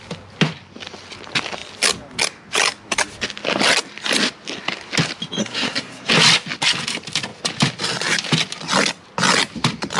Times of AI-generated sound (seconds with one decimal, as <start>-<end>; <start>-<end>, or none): 5.4-6.1